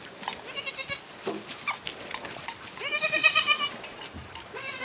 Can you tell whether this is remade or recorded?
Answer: remade